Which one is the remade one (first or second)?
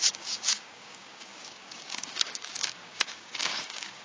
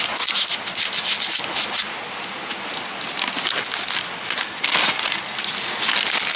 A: first